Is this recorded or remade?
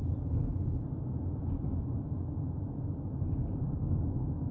recorded